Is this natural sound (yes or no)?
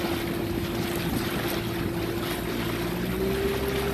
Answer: yes